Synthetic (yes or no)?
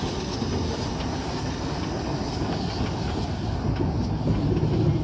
no